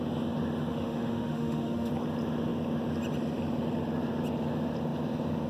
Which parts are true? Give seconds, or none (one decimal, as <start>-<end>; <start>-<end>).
0.0-0.7; 1.9-5.5